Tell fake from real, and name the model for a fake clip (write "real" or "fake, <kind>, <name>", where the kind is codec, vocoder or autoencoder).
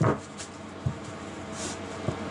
real